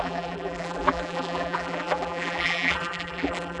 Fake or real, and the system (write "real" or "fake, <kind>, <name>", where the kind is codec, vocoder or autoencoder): fake, vocoder, BigVGAN v2